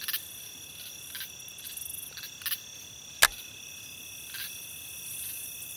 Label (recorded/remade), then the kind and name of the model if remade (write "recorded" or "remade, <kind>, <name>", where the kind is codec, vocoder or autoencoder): recorded